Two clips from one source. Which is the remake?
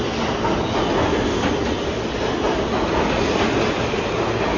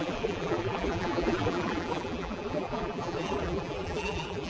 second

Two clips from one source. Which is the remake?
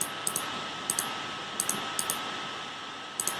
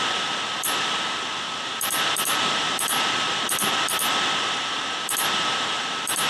second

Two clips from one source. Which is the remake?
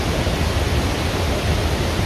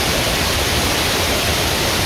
second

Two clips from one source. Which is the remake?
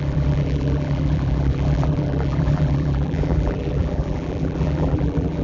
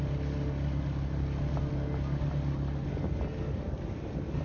first